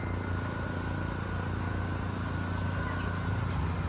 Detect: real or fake real